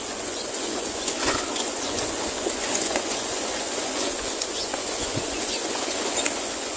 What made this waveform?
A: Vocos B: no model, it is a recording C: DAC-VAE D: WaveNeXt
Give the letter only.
A